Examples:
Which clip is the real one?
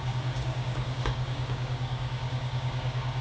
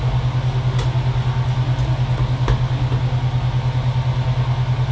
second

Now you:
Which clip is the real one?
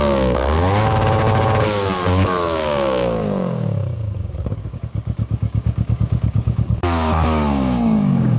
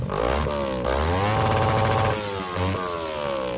second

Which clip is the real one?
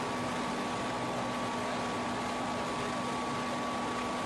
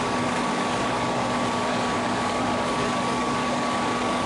first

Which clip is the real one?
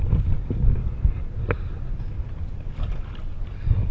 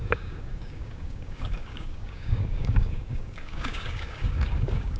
first